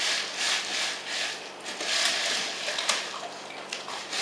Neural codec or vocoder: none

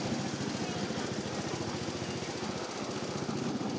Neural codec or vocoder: none